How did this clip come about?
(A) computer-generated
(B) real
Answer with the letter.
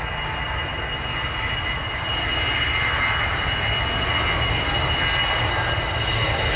B